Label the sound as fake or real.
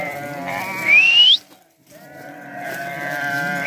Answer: fake